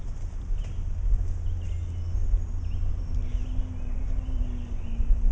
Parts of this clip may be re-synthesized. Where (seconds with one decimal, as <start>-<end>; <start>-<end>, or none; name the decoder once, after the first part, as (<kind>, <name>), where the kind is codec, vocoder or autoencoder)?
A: none